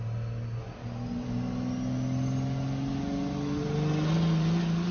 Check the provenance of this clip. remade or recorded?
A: recorded